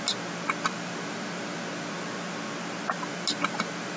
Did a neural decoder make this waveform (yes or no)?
no